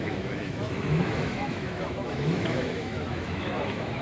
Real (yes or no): no